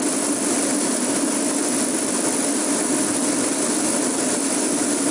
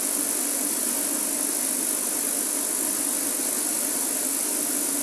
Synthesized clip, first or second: first